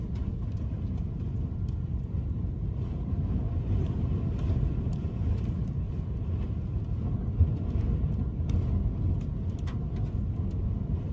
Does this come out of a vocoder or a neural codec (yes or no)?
no